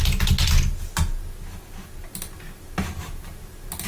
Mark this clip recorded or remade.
recorded